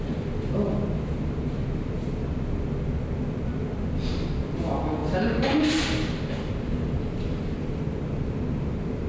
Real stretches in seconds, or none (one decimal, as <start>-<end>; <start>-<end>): 0.0-9.1